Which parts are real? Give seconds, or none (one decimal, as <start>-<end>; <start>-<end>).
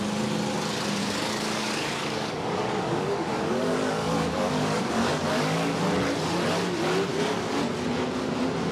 0.0-1.0; 5.8-7.1; 7.6-8.7